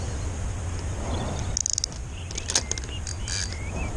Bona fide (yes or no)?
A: yes